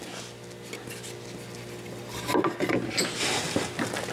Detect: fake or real real